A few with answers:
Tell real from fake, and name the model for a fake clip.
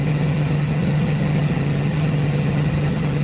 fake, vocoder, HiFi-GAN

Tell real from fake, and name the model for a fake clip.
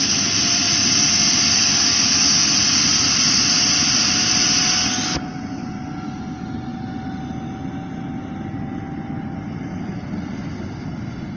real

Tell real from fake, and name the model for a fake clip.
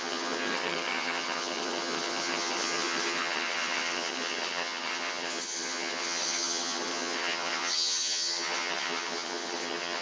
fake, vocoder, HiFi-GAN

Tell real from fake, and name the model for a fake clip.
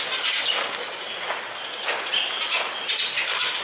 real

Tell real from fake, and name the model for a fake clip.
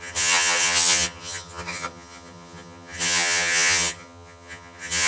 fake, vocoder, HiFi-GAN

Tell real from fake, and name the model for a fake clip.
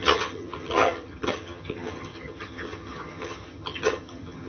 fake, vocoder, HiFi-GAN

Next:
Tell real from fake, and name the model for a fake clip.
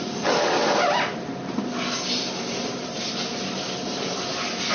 real